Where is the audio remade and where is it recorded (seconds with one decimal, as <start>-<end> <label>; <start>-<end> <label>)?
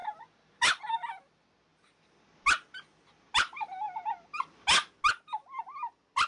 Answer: 0.0-6.3 recorded